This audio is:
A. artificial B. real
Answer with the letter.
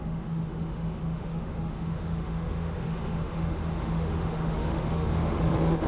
A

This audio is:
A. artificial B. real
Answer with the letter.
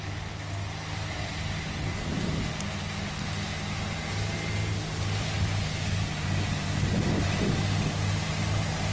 B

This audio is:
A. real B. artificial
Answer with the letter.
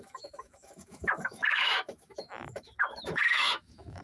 B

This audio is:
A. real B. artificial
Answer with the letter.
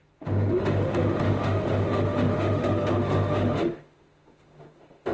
B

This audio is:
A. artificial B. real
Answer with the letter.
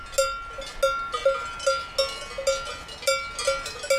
B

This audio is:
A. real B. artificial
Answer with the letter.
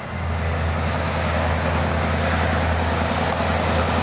A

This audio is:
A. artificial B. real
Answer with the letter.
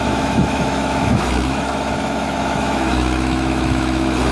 A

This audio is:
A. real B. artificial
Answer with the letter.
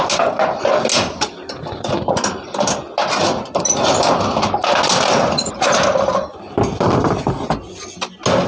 A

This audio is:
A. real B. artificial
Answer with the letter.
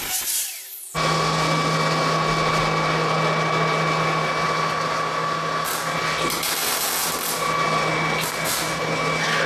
A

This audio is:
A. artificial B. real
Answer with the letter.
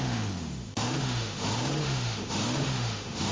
A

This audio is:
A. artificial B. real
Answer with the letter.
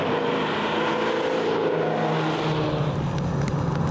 B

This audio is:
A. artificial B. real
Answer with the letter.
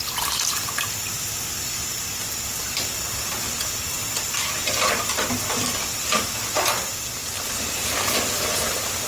B